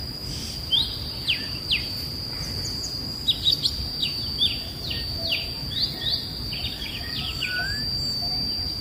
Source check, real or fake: real